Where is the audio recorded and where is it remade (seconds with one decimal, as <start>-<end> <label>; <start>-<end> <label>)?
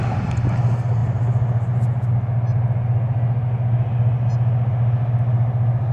0.0-5.9 recorded